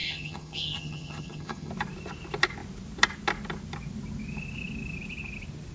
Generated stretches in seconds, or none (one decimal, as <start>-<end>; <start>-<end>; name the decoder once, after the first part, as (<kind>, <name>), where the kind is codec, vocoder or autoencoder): 0.0-1.7 (vocoder, HiFi-GAN)